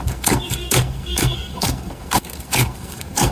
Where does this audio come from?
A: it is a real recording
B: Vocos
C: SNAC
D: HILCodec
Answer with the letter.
C